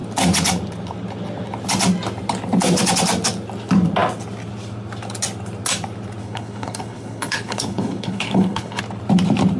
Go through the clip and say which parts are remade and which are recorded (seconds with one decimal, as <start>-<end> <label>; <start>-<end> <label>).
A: 0.0-6.2 recorded; 6.2-8.8 remade; 8.8-9.6 recorded